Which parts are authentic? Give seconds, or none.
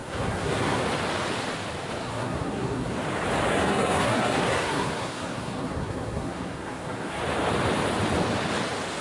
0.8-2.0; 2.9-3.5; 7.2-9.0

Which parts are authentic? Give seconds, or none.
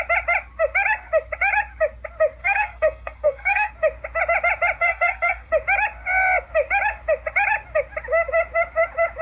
0.0-2.4; 3.7-4.8; 5.5-9.2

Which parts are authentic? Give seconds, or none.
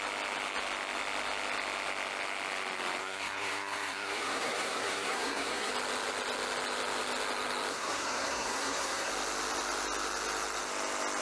0.0-3.0; 5.7-7.7; 9.1-11.2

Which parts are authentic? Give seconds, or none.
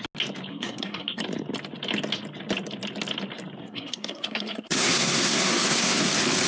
0.0-0.5; 1.2-3.6; 6.1-6.5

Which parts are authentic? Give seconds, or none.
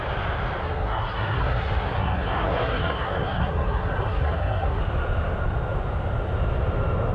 0.0-0.6; 4.8-7.1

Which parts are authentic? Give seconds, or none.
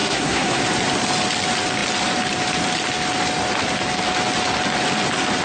0.6-5.4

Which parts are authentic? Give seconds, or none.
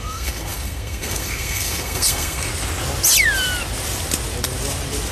2.5-5.1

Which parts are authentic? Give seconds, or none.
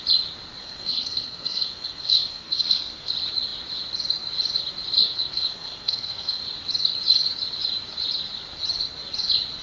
0.0-0.6; 3.1-5.0; 6.4-9.6